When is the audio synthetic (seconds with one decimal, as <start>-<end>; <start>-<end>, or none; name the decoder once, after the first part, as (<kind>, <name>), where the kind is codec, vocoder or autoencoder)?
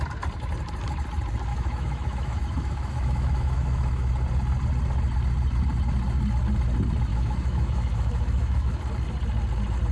1.5-4.1 (autoencoder, DAC-VAE); 7.1-8.8